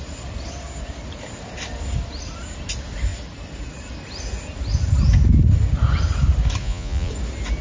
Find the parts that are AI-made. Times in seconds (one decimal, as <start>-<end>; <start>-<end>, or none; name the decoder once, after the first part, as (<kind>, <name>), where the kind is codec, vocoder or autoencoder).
6.6-7.1 (vocoder, Vocos)